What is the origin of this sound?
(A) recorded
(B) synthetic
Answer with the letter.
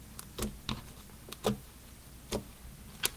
A